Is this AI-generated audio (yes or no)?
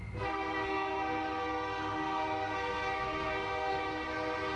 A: yes